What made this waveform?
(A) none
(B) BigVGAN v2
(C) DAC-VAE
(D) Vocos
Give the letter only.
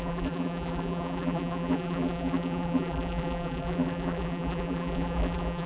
B